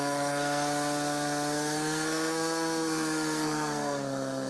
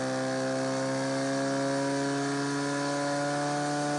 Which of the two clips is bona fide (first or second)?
second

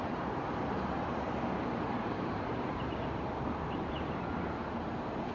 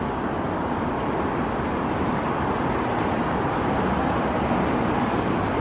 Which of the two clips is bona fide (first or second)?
second